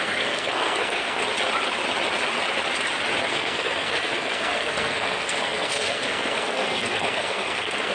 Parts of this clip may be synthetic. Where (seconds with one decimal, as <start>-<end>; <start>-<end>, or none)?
0.0-1.2; 3.3-7.9